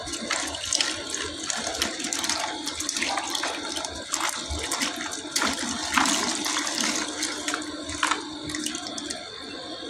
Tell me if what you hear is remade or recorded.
recorded